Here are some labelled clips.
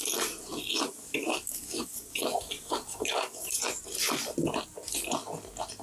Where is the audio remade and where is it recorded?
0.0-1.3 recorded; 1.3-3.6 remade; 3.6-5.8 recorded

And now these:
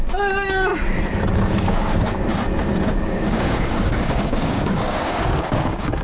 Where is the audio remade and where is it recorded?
0.0-0.7 remade; 0.7-1.3 recorded; 1.3-2.3 remade; 2.3-2.9 recorded; 2.9-6.0 remade

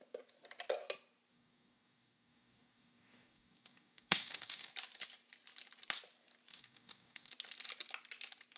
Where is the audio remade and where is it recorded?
0.0-1.3 recorded; 1.3-4.7 remade; 4.7-6.5 recorded; 6.5-7.3 remade; 7.3-8.6 recorded

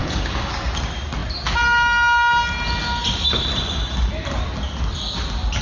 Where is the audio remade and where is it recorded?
0.0-0.5 remade; 0.5-5.6 recorded

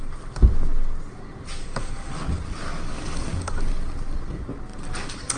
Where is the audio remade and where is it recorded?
0.0-1.6 recorded; 1.6-2.1 remade; 2.1-2.9 recorded; 2.9-3.7 remade; 3.7-5.4 recorded